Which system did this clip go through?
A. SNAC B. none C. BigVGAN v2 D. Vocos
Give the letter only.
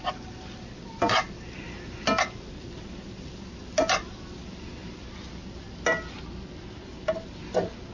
B